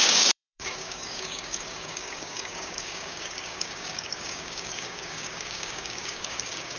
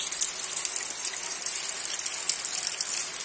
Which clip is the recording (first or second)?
second